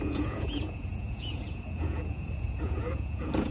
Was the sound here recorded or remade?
remade